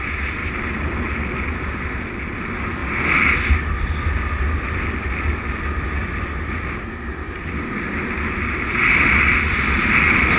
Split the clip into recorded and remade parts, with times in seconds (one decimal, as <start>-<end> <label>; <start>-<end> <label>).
0.0-6.0 recorded; 6.0-8.0 remade; 8.0-10.4 recorded